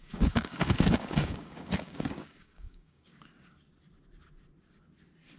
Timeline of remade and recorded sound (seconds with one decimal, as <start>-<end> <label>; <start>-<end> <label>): 0.0-3.2 remade; 3.2-5.4 recorded